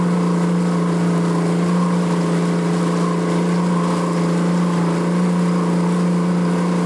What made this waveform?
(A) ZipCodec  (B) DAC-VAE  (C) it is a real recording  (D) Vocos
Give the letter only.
C